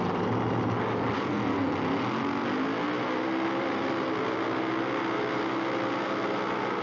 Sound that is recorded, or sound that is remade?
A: recorded